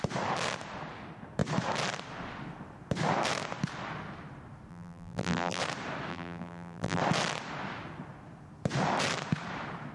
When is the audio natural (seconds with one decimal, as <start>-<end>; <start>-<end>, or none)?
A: 0.0-4.7; 5.6-6.1; 7.0-9.9